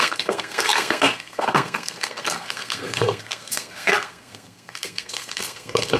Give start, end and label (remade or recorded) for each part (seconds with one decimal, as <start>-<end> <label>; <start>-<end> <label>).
0.0-6.0 remade